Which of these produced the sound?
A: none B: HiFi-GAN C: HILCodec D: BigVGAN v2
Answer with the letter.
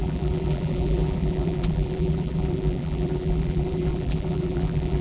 D